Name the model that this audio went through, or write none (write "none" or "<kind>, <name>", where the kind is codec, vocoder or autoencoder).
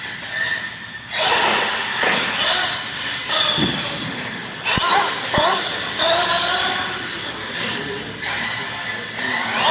none